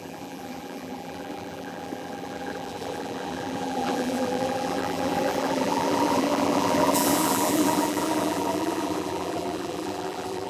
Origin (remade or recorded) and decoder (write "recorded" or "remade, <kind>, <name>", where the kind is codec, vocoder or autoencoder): remade, vocoder, BigVGAN v2